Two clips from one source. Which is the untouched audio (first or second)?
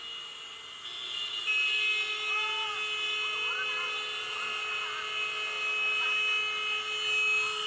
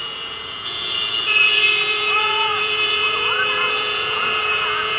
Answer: first